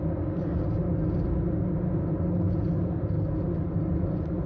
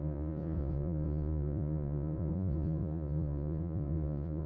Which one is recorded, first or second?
first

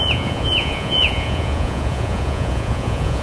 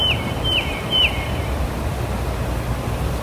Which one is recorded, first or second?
second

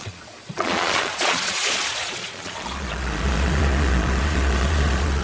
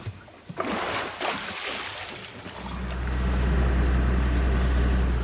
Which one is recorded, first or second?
second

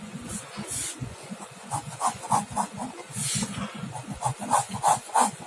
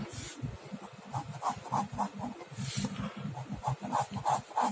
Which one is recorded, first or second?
second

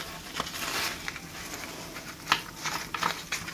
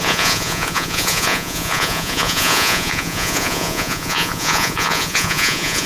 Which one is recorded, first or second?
first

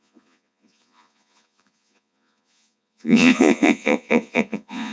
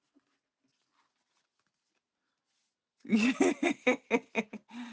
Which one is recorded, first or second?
second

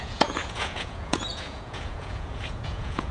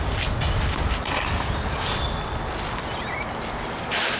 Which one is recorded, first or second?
second